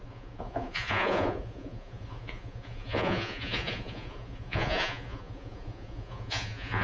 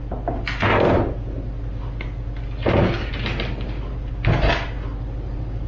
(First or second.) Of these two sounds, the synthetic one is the first